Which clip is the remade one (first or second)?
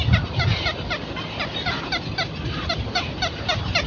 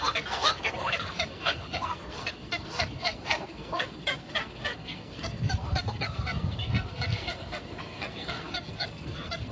second